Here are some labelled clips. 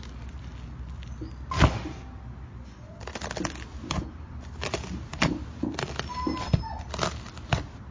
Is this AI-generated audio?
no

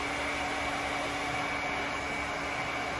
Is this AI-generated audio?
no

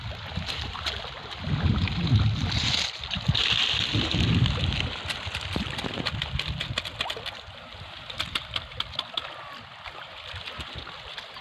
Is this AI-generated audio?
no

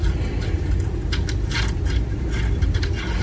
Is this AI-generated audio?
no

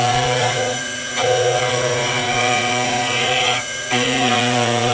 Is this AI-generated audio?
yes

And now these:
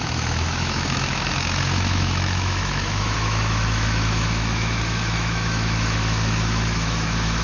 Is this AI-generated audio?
yes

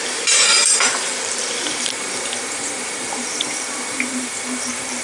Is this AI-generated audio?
yes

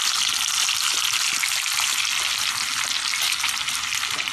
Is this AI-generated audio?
no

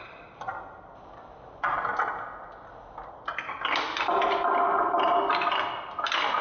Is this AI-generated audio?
no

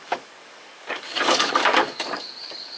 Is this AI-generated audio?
yes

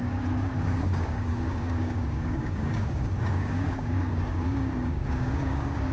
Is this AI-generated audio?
yes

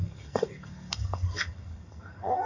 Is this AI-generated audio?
yes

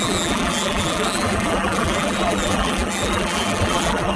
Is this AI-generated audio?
yes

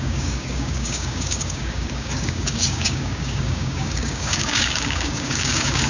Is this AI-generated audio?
yes